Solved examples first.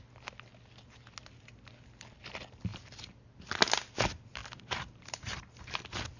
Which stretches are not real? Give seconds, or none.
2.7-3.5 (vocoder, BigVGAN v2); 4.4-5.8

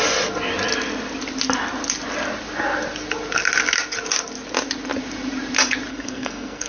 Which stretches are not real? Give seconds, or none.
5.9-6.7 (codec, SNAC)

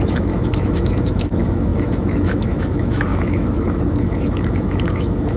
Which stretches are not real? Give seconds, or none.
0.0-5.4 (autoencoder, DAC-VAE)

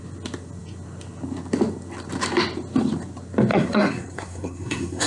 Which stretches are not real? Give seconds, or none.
3.5-5.1 (codec, SNAC)

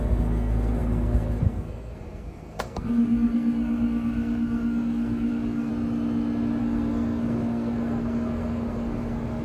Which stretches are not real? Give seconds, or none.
0.0-5.7 (codec, SNAC); 6.6-9.4

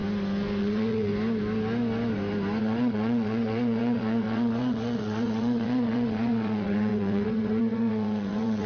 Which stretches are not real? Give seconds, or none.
0.6-1.1 (vocoder, WaveNeXt); 2.6-8.7

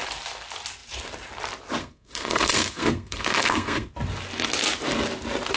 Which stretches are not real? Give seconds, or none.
1.8-3.9 (codec, SNAC)